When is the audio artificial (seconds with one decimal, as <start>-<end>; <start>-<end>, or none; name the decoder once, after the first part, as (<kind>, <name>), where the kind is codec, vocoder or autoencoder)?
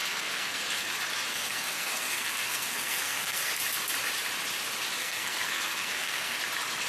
0.0-0.9 (codec, SNAC); 1.3-3.6; 5.0-6.4